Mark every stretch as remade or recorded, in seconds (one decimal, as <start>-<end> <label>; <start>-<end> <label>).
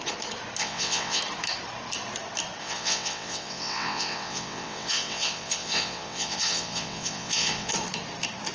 0.0-0.6 recorded; 0.6-1.2 remade; 1.2-2.6 recorded; 2.6-7.7 remade; 7.7-8.5 recorded